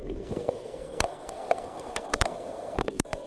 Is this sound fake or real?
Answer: fake